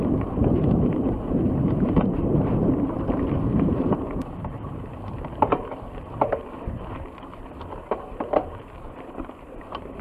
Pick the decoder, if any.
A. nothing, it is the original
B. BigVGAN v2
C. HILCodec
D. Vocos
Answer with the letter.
B